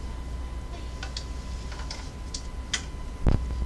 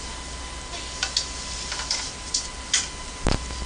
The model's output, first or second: second